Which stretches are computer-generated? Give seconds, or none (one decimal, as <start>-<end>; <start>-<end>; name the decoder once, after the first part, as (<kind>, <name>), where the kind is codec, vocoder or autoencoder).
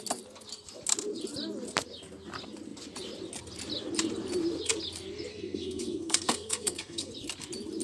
5.3-7.1 (codec, SNAC)